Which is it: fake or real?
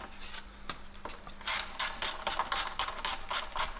real